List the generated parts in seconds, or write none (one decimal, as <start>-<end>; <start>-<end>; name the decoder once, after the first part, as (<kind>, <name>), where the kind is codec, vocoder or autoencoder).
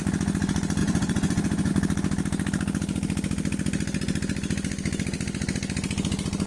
0.8-1.7 (vocoder, Vocos)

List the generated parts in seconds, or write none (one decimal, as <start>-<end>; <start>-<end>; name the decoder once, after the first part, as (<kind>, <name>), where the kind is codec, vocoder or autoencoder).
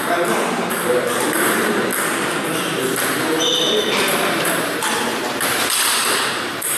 0.0-1.9 (vocoder, BigVGAN v2); 3.3-5.1; 6.3-6.8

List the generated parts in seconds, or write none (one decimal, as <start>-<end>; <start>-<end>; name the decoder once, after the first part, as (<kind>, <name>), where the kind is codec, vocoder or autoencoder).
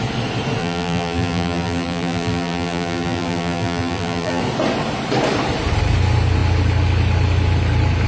0.6-4.4 (vocoder, BigVGAN v2)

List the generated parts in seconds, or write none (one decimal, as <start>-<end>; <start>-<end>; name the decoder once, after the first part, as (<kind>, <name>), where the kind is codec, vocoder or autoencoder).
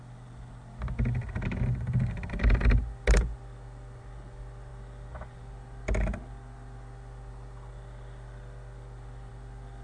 none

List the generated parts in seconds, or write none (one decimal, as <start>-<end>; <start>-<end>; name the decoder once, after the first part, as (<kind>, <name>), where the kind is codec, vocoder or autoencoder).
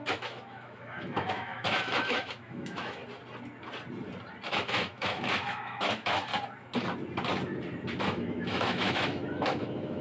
0.0-3.0 (autoencoder, DAC-VAE); 4.5-6.3; 8.0-10.0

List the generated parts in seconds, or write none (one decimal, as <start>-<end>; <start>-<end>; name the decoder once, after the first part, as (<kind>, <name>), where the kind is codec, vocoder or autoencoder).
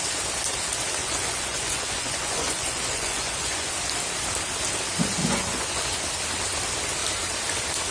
1.0-3.7 (vocoder, Vocos); 5.2-6.0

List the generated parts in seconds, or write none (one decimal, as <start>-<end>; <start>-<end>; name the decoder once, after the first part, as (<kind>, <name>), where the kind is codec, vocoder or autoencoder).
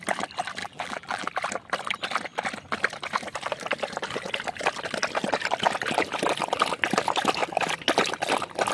0.6-1.3 (vocoder, BigVGAN v2)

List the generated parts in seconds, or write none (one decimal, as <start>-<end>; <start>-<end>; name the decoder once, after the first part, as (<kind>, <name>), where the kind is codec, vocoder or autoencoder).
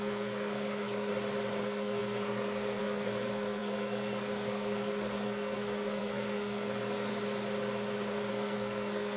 0.0-1.1 (codec, SNAC); 1.6-7.1; 8.3-9.2